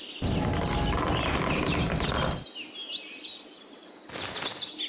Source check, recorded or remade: recorded